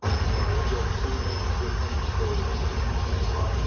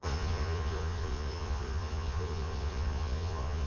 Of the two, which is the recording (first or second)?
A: first